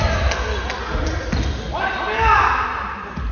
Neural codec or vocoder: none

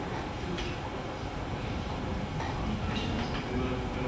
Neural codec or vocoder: none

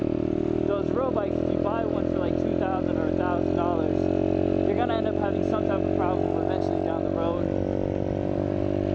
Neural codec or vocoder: none